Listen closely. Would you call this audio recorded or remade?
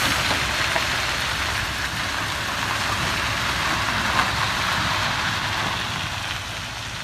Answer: recorded